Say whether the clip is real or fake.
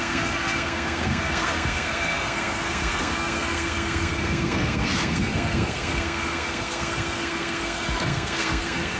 fake